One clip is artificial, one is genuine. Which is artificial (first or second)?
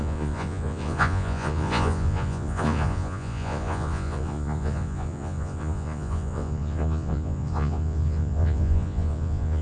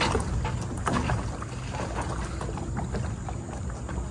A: first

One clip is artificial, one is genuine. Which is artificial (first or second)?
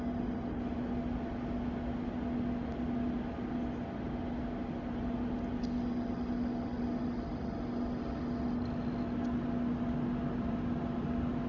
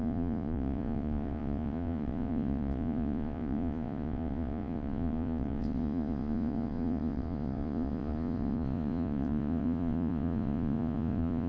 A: second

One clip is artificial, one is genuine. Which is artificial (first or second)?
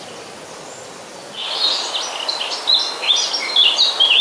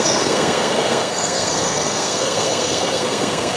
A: second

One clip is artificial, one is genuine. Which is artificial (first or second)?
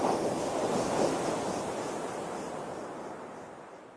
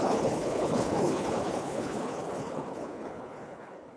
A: second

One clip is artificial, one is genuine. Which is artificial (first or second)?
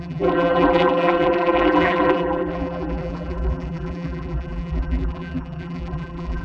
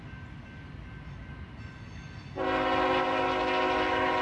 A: first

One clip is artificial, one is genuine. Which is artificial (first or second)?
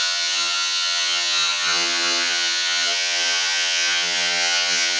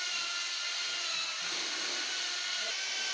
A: first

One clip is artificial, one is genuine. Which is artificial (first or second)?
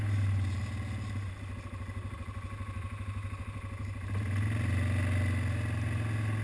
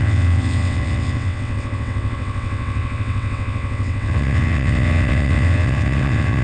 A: second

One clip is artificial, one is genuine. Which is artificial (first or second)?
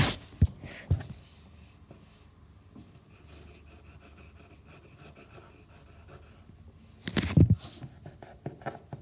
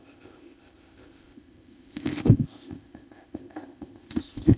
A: second